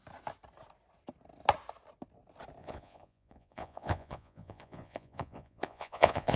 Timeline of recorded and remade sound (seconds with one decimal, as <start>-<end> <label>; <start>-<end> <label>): 0.0-2.6 recorded; 2.6-6.4 remade